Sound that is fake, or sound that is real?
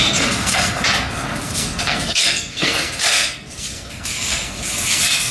fake